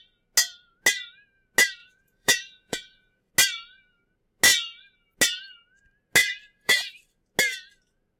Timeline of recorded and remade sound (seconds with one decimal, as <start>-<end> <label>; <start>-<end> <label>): 0.0-1.8 recorded; 1.8-3.3 remade; 3.3-6.2 recorded; 6.2-6.9 remade; 6.9-8.2 recorded